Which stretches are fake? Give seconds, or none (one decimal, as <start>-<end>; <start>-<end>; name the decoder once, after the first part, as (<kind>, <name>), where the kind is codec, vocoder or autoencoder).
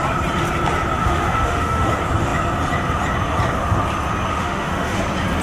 1.0-1.9 (autoencoder, DAC-VAE); 4.3-5.0